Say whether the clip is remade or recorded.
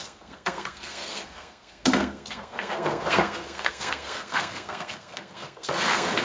remade